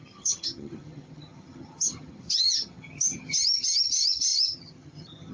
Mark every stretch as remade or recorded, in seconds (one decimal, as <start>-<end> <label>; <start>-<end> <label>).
0.0-5.3 remade